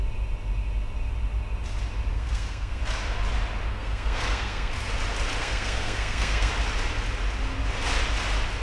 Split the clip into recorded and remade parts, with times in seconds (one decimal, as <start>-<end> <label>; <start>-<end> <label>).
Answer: 0.0-2.1 recorded; 2.1-2.8 remade; 2.8-3.7 recorded; 3.7-4.7 remade; 4.7-5.4 recorded; 5.4-6.5 remade; 6.5-8.6 recorded